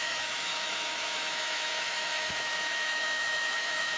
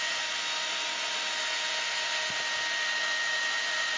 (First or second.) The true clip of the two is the second